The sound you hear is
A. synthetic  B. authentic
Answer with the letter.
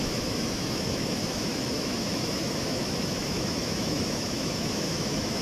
A